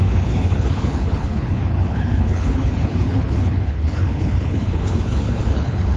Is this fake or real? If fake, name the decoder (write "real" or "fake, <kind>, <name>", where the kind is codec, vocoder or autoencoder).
fake, codec, HILCodec